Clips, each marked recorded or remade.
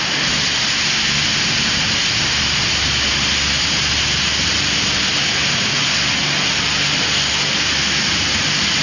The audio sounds recorded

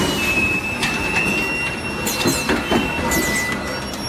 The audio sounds recorded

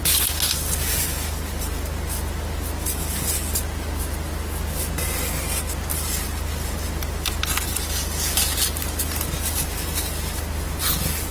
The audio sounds recorded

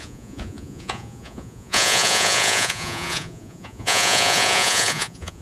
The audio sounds remade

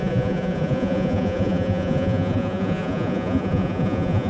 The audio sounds remade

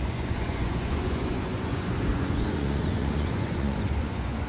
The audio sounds remade